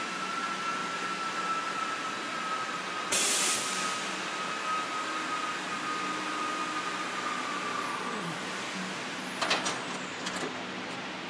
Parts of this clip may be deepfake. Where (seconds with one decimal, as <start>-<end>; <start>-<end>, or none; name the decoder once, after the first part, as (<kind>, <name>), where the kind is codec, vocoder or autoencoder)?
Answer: none